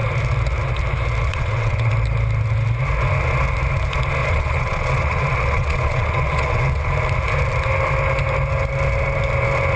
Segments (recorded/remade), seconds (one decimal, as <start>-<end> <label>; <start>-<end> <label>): 0.0-1.3 recorded; 1.3-1.9 remade; 1.9-4.2 recorded; 4.2-6.9 remade; 6.9-9.8 recorded